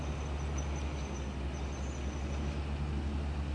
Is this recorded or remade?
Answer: recorded